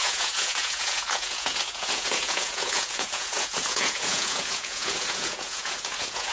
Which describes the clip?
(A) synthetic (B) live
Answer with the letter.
A